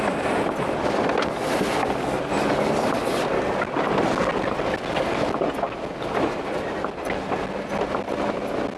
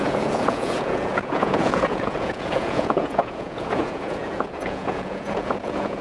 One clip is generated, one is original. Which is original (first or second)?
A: first